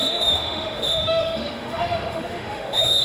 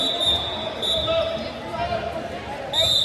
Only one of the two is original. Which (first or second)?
second